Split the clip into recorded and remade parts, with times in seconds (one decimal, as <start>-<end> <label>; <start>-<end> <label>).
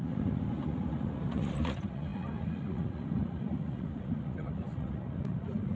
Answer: 0.0-5.8 remade